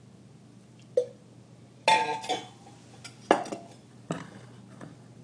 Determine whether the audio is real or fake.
real